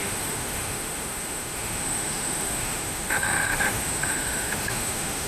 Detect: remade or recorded remade